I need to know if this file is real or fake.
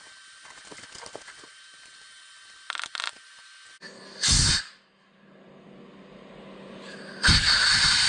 real